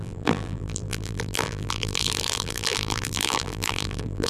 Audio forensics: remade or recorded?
remade